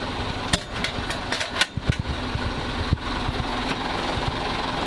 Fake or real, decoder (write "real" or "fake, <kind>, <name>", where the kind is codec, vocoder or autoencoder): real